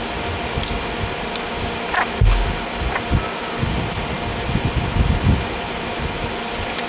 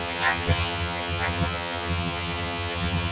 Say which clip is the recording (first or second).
first